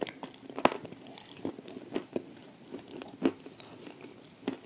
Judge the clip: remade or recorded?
recorded